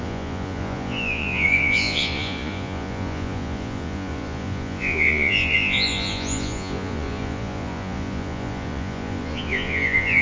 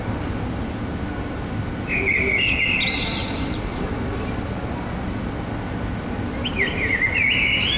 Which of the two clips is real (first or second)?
second